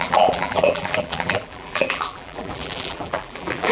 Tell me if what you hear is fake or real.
fake